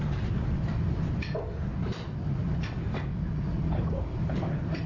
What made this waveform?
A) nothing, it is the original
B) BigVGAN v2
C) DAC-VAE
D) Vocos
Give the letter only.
A